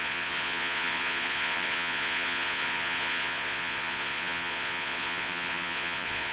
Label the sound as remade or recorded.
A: remade